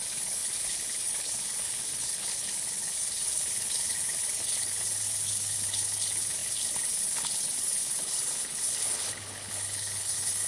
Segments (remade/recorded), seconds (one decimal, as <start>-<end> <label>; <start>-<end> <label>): 0.0-10.5 remade